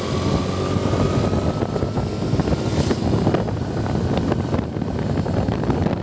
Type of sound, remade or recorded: recorded